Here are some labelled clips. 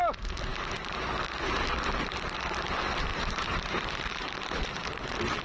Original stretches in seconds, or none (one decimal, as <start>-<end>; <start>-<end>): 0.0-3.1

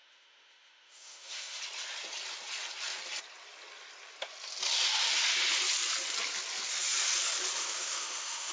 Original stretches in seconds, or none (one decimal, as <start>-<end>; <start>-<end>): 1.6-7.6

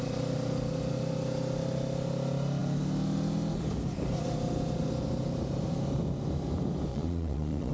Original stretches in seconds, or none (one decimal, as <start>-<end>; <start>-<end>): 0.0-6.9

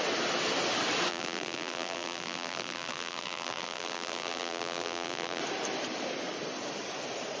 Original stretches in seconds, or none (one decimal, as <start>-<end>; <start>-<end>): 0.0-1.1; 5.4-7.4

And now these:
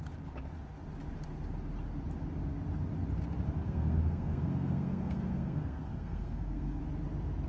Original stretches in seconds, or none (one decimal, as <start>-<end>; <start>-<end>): 0.0-3.6; 6.8-7.5

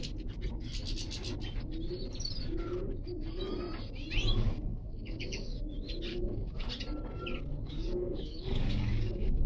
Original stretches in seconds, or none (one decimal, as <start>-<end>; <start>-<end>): 0.0-4.7; 5.6-6.1; 6.7-7.5

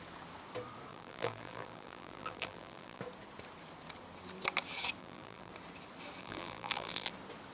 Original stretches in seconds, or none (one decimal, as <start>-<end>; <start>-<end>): 0.0-0.9; 3.0-5.0; 5.5-6.2; 7.1-7.5

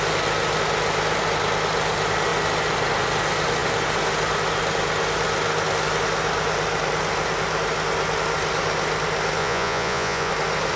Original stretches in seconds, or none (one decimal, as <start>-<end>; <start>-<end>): 0.0-9.4; 10.3-10.8